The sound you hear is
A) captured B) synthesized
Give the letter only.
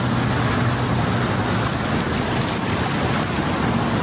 A